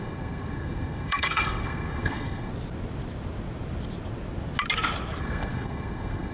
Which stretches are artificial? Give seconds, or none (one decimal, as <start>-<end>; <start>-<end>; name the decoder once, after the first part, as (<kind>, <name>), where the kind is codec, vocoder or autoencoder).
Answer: 0.0-2.5 (codec, SNAC); 5.2-6.3